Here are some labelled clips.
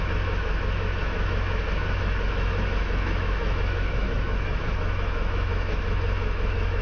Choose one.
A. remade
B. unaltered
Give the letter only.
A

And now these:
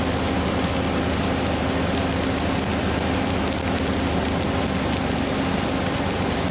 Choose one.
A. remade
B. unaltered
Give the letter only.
B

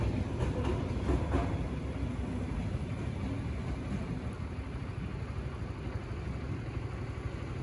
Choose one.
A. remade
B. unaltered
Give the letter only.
B